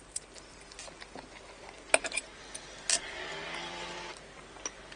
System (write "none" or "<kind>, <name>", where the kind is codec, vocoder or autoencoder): none